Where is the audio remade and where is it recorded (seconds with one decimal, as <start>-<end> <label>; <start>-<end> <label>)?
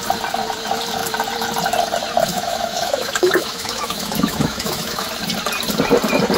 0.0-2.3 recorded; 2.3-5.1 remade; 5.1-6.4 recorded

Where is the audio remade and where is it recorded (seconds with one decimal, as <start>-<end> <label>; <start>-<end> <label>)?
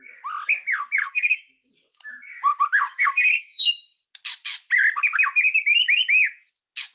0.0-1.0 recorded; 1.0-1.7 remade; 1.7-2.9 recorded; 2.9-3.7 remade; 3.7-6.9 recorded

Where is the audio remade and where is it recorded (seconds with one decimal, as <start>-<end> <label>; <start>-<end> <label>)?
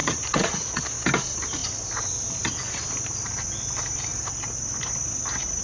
0.0-0.8 remade; 0.8-5.6 recorded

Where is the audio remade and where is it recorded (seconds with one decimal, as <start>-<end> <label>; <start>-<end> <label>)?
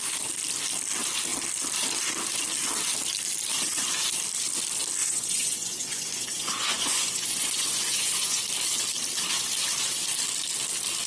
0.0-5.0 recorded; 5.0-8.4 remade; 8.4-11.1 recorded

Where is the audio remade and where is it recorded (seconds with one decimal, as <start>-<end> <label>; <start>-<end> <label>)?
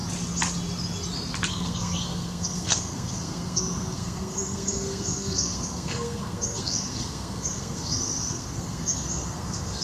0.0-1.5 recorded; 1.5-9.8 remade